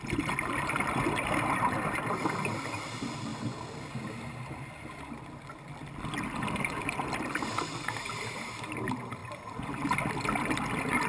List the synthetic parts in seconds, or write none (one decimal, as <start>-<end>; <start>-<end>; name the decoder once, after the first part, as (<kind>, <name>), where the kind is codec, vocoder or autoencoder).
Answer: none

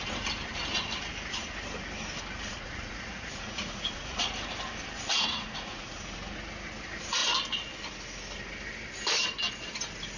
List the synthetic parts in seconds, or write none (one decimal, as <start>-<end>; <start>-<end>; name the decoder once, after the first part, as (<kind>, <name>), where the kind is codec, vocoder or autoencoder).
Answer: 2.5-4.3 (vocoder, Vocos); 5.1-6.0

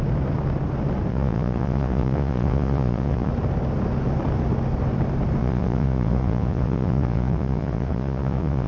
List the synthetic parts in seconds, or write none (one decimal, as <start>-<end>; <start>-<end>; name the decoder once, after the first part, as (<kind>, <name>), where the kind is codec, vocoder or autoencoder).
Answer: 1.1-3.3 (vocoder, Vocos); 5.4-8.7

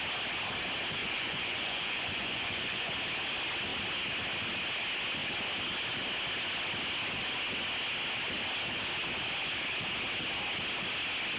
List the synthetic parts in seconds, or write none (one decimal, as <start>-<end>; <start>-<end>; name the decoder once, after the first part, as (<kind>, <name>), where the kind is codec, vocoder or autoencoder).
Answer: 1.0-2.9 (vocoder, Vocos)

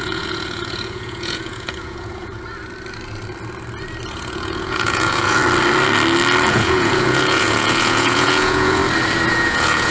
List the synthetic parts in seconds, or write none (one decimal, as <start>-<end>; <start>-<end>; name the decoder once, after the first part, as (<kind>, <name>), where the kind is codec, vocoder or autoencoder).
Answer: 0.0-2.3 (vocoder, Vocos); 4.1-5.4; 6.5-8.8; 9.3-9.9